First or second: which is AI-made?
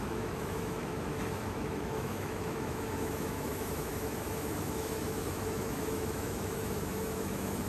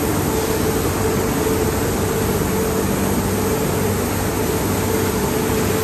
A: first